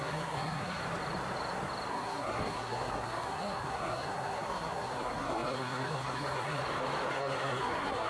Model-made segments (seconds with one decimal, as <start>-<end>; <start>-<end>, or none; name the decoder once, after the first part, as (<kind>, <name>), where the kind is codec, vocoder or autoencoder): 0.0-0.8 (codec, SNAC); 1.9-6.6; 7.1-8.1